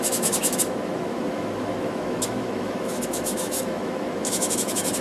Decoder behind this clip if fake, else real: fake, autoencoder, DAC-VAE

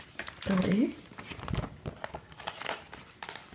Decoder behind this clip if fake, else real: real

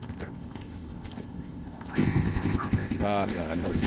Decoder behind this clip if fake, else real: fake, codec, ZipCodec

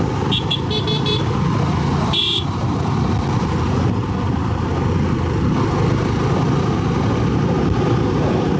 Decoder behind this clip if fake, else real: fake, vocoder, BigVGAN v2